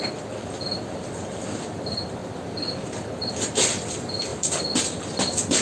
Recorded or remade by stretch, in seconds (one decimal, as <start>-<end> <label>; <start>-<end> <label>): 0.0-5.6 recorded